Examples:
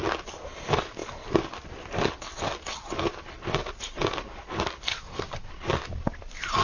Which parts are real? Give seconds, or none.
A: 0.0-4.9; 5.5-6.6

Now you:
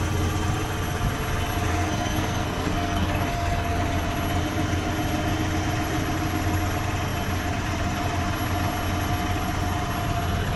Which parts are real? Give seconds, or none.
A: 0.0-1.7; 3.8-10.6

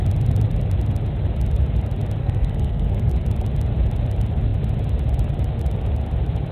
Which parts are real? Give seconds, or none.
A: 0.0-2.2; 3.1-6.5

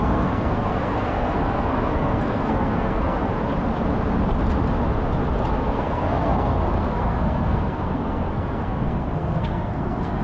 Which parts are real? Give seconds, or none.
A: 3.3-5.5

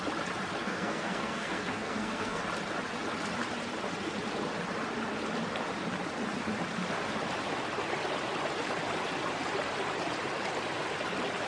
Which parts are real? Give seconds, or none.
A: 0.0-0.6; 2.4-11.5

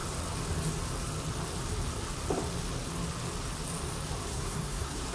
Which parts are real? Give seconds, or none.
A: 0.0-4.3